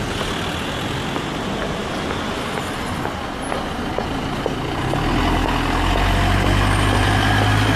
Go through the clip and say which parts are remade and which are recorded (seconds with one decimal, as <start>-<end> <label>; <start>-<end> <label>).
0.0-7.8 recorded